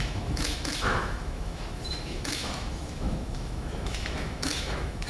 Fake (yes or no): yes